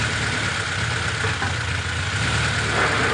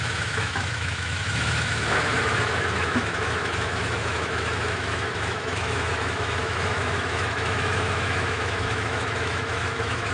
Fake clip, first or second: second